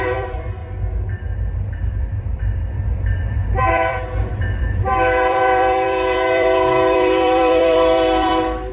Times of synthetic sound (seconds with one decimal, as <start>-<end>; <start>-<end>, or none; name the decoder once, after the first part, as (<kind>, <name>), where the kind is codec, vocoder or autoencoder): 0.0-0.6 (vocoder, BigVGAN v2); 1.7-8.7